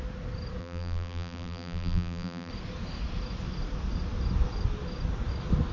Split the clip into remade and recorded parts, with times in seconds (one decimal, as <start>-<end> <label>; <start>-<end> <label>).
0.0-0.6 recorded; 0.6-2.5 remade; 2.5-5.7 recorded